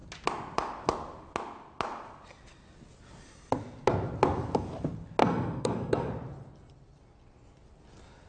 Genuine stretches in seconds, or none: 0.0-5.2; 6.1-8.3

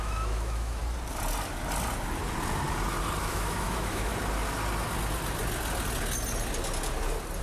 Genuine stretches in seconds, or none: 0.8-3.2; 4.1-7.4

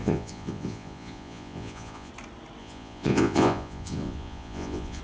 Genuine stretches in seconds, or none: 2.1-2.6

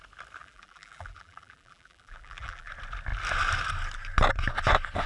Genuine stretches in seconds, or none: 0.0-0.4; 2.7-5.1

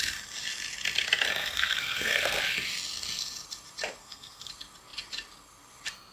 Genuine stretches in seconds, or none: 0.0-1.4; 2.4-4.0; 4.5-6.1

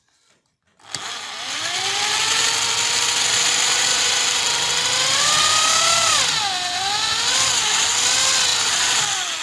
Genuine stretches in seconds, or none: 0.0-3.9; 4.4-8.5; 9.0-9.4

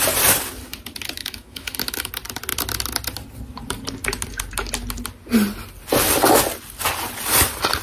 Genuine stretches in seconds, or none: 0.0-1.2; 2.1-7.8

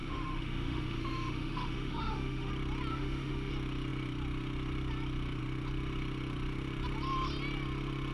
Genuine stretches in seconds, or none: 2.5-2.9; 3.5-8.1